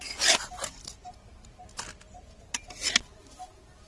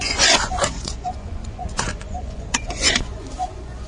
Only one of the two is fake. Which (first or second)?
second